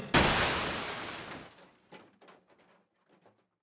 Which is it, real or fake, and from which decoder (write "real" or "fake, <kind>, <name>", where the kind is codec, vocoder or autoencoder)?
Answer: real